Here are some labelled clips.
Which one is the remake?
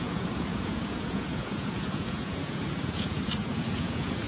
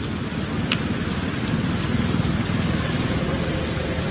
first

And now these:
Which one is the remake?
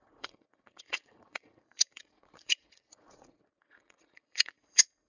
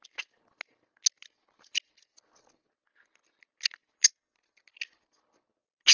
first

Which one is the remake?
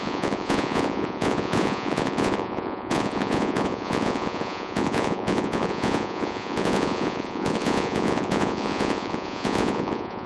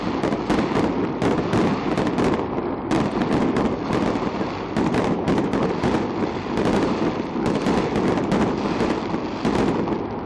first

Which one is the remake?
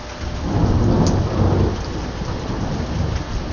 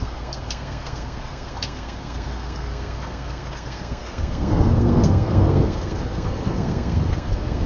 second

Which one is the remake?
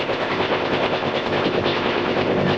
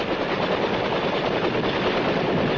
first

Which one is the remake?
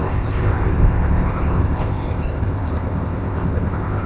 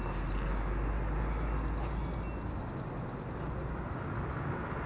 first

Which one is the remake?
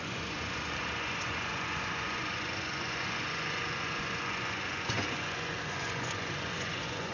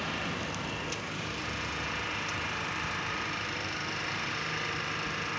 first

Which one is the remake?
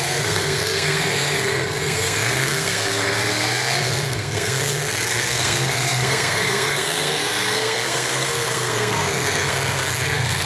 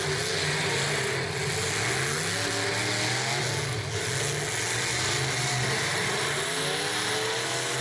first